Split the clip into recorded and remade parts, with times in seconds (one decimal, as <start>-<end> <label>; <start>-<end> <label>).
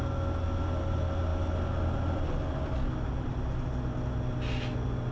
0.0-5.1 recorded